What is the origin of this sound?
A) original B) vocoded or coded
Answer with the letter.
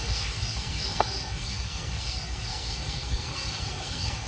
B